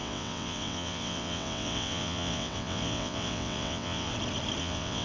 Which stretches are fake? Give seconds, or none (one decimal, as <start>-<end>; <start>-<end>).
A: 0.0-4.1; 4.6-5.0